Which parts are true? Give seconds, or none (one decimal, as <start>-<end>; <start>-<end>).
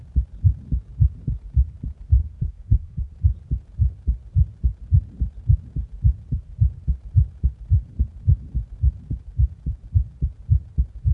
0.0-2.2; 3.1-11.1